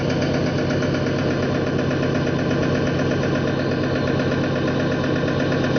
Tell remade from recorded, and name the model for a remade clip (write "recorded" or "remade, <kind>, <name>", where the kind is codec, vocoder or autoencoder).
recorded